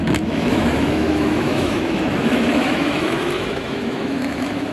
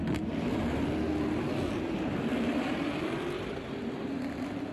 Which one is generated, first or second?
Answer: first